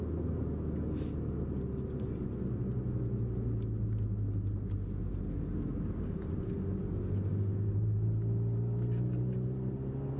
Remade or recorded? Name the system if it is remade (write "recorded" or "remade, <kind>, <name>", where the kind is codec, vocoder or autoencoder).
recorded